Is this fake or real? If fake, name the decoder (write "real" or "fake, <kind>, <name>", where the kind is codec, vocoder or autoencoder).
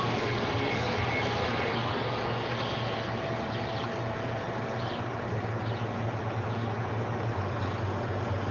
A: real